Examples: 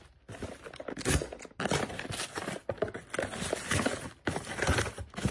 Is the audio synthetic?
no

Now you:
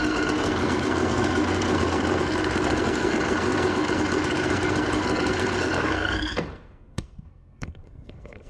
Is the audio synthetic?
yes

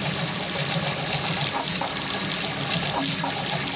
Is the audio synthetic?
no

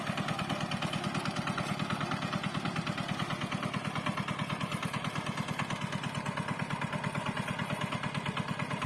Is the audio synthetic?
no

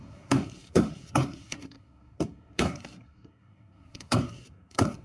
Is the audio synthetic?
yes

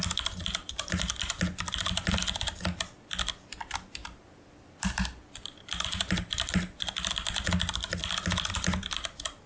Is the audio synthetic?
no